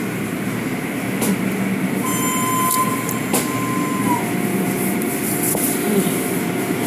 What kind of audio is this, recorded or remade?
recorded